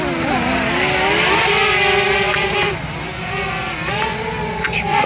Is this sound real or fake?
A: real